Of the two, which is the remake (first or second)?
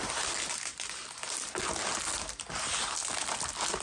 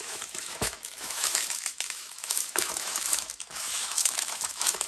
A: second